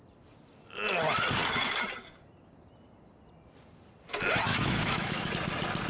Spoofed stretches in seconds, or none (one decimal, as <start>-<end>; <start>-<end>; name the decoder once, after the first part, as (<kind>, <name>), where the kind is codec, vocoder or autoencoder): 4.5-5.3 (autoencoder, DAC-VAE)